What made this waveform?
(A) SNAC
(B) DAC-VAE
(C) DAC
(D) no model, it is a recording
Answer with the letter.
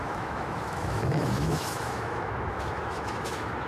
B